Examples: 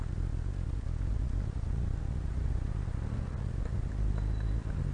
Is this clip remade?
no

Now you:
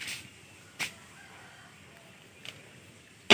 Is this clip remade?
no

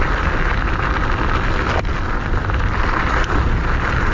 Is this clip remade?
no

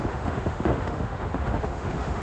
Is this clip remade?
yes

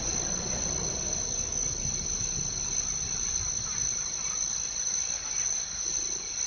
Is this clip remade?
no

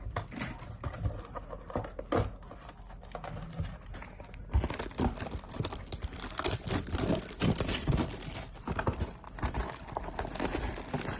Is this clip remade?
no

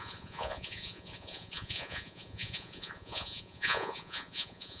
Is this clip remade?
yes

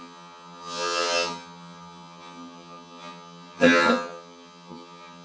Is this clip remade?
yes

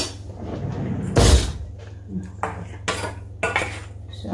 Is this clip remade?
no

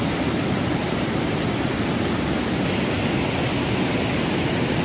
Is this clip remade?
no